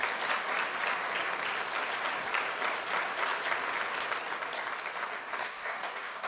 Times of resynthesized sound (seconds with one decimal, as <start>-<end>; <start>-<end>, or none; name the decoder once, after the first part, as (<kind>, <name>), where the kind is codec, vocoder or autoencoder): 5.4-6.3 (codec, DAC)